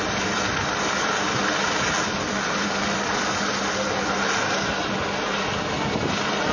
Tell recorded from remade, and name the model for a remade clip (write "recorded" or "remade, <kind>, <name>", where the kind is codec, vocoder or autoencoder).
recorded